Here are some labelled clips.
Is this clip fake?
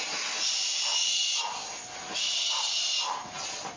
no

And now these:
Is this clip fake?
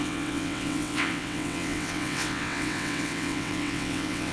yes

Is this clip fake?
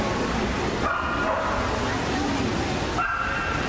no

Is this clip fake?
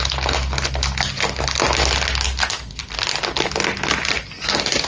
no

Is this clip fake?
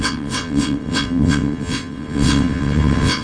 yes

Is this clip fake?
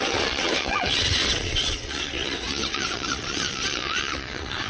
yes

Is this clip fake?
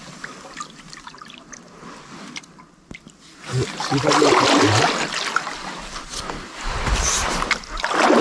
no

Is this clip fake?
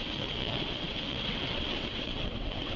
yes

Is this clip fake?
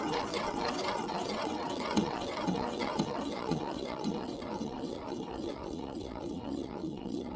yes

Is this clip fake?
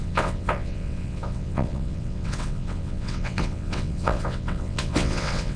yes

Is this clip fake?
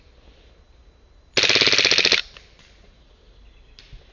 no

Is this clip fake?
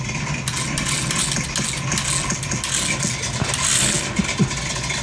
no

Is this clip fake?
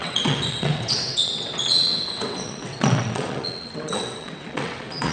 yes